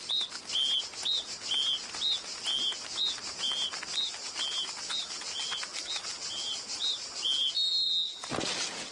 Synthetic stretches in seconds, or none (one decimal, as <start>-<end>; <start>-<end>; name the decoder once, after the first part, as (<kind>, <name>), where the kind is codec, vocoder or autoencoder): none